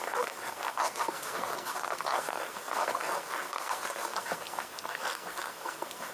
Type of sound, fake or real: fake